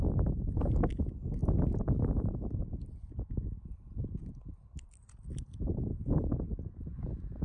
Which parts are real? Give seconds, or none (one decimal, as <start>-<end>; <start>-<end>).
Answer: 0.0-1.4; 2.6-7.4